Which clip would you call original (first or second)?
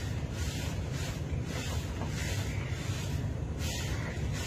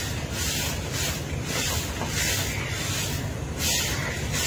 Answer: second